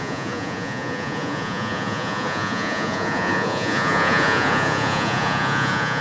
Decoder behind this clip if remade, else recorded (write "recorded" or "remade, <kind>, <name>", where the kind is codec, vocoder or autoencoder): remade, vocoder, Vocos